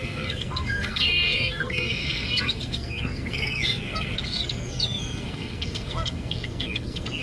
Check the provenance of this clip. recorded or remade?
remade